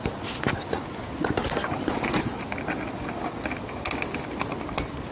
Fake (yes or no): no